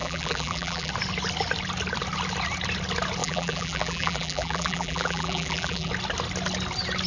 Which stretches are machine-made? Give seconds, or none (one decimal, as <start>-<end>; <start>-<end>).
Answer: 0.0-0.9; 3.2-5.9